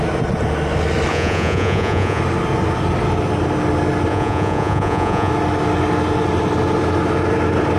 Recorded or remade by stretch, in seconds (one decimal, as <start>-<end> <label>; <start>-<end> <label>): 0.0-1.1 recorded; 1.1-2.2 remade; 2.2-4.1 recorded; 4.1-5.3 remade; 5.3-7.8 recorded